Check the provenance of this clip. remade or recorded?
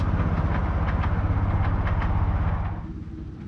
recorded